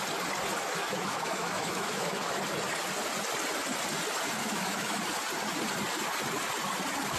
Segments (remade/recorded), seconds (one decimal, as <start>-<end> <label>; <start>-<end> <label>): 0.0-0.8 recorded; 0.8-2.4 remade; 2.4-4.4 recorded; 4.4-5.0 remade; 5.0-7.2 recorded